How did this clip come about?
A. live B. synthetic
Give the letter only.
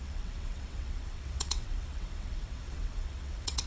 B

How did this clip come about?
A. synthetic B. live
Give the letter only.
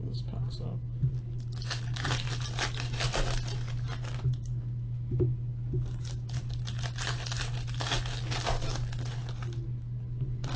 B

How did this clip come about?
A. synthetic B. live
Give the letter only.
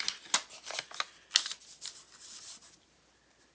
B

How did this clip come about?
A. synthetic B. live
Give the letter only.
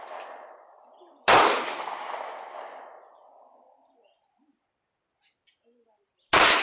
B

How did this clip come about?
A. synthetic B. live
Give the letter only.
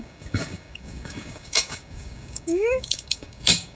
A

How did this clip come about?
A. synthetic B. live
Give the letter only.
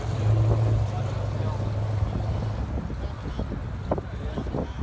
B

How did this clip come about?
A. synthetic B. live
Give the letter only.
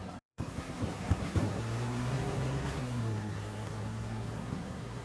A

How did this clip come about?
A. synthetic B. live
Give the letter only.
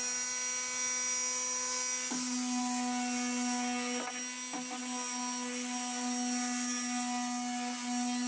B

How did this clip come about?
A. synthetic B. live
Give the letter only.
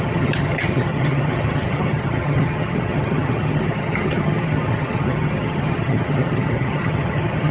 A